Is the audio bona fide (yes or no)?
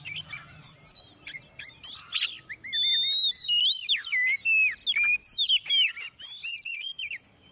yes